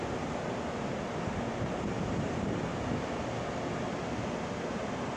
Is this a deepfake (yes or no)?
yes